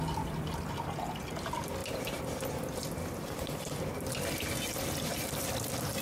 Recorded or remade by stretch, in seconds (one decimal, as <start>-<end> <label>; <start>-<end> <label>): 0.0-1.8 recorded; 1.8-5.4 remade; 5.4-6.0 recorded